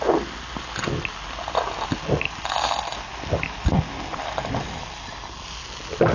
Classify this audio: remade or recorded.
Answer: recorded